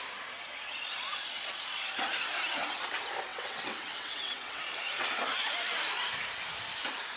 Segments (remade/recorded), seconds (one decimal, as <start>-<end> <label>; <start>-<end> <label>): 0.0-3.3 recorded; 3.3-4.6 remade; 4.6-7.2 recorded